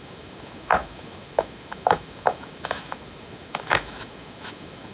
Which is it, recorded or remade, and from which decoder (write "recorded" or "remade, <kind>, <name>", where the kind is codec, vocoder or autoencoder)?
remade, autoencoder, DAC-VAE